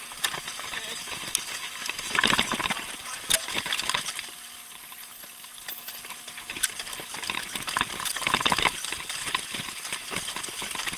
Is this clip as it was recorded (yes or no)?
yes